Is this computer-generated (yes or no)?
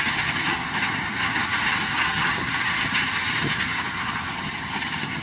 yes